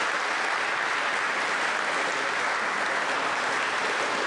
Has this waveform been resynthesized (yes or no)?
no